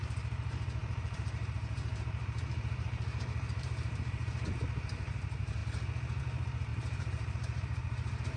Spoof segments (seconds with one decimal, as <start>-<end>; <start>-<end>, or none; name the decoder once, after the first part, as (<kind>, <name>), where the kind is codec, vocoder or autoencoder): 0.8-4.4 (vocoder, BigVGAN v2); 6.7-8.4